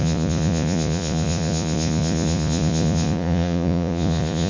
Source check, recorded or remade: remade